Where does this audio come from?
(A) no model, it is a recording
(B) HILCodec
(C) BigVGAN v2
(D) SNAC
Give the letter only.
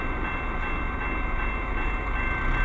A